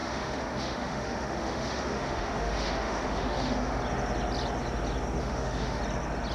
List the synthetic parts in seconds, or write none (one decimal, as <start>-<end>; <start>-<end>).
0.0-3.8; 5.2-5.8